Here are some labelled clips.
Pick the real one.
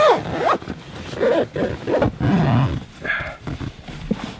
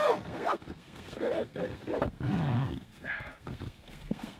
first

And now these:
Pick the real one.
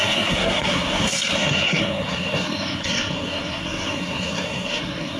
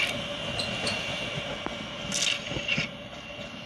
second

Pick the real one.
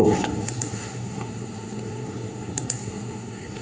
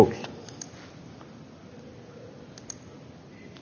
second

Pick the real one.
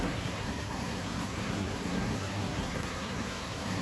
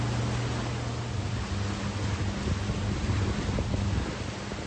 second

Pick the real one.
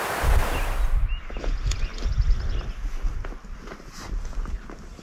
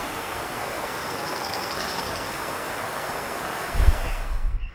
first